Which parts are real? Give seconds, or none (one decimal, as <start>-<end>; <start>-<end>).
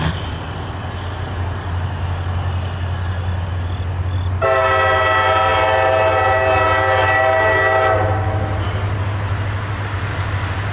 0.0-10.7